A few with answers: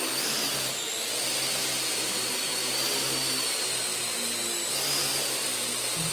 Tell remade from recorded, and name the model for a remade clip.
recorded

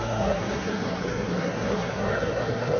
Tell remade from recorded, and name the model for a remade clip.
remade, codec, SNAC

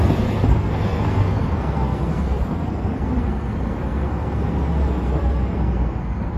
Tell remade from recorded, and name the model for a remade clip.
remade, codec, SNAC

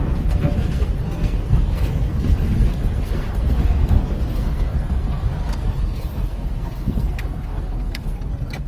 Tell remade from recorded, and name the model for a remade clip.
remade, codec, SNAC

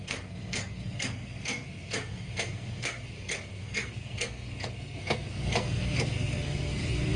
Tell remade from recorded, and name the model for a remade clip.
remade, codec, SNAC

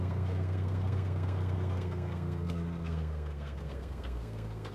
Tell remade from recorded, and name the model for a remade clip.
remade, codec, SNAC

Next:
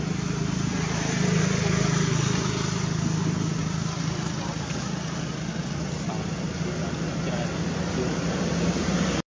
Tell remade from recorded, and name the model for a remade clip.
recorded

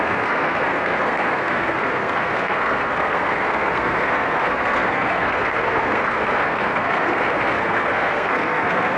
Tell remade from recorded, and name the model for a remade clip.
remade, codec, SNAC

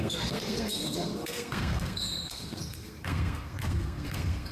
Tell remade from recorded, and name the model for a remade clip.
remade, codec, SNAC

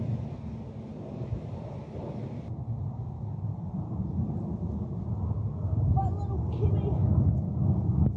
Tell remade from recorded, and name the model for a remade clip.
recorded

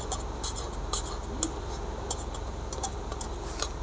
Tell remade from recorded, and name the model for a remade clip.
recorded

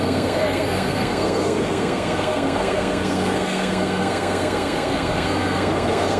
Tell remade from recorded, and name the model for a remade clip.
remade, codec, SNAC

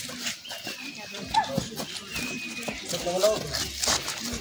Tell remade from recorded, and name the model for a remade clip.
recorded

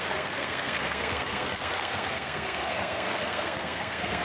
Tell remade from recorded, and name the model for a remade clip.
remade, codec, SNAC